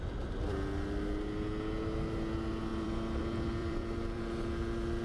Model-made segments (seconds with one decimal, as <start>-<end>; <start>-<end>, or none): 2.7-3.2; 3.6-4.2